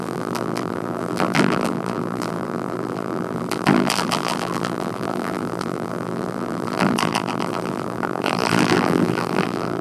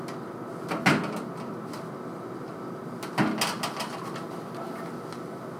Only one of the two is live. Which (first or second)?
second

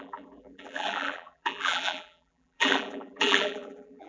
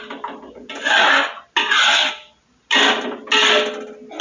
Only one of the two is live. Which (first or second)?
second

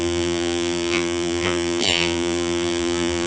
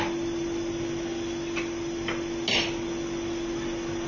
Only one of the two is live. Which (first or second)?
second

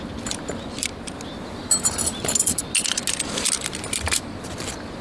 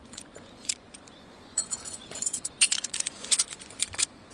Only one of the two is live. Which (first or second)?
first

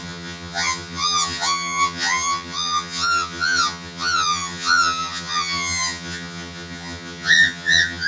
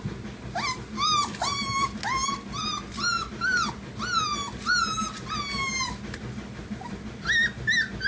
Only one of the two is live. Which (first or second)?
second